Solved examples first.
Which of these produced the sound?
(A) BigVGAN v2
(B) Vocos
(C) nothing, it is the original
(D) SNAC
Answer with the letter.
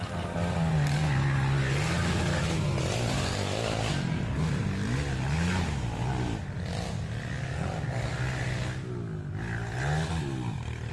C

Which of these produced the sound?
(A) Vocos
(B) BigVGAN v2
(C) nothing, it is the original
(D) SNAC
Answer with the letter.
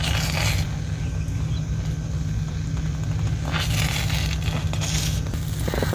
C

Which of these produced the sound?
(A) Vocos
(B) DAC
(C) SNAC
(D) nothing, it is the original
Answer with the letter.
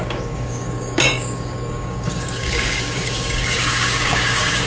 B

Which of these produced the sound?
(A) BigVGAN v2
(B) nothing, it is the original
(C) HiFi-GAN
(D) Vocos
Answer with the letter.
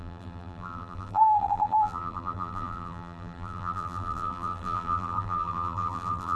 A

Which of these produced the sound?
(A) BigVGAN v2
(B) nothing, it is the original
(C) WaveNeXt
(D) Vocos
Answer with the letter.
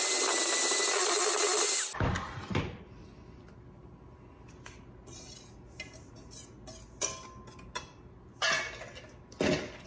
B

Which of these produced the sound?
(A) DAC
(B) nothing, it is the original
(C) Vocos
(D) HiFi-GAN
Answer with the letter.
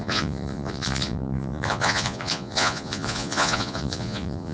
C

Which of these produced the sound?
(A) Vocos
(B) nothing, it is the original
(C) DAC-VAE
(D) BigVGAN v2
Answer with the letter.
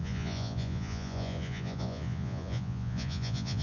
A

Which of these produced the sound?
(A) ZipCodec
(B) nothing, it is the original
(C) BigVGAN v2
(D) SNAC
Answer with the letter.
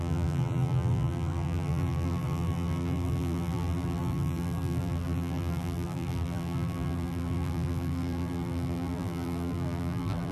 C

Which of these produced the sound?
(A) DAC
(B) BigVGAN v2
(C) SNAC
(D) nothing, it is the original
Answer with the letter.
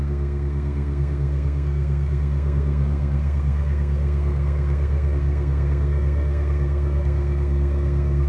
C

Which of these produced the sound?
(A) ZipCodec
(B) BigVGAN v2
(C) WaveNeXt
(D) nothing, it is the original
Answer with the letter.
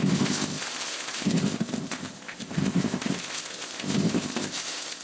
A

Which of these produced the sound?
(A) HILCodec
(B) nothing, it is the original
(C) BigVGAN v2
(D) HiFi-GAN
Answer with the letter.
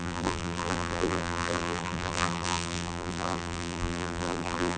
C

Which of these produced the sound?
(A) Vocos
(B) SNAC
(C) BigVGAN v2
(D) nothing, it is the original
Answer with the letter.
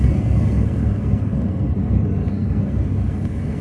B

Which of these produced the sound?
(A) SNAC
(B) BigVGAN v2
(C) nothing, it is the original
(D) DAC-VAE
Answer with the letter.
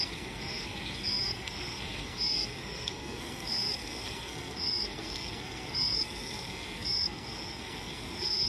A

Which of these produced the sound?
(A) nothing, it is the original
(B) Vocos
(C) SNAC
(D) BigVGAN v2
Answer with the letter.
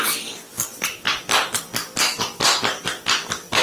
A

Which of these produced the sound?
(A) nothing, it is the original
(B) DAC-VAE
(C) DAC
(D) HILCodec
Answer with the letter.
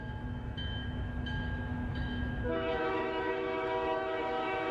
B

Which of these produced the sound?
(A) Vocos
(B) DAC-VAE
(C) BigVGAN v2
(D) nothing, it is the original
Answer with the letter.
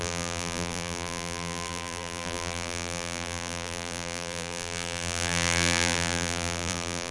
C